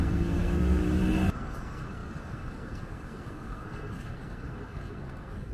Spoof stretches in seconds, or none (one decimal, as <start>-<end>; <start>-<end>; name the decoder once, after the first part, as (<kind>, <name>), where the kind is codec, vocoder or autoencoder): 0.0-0.8 (codec, SNAC); 1.3-5.5